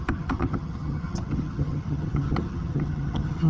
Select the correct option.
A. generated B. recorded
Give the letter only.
A